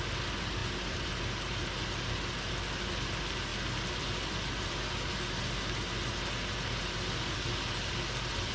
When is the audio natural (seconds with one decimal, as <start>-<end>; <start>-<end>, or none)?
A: 0.0-0.6; 1.1-8.5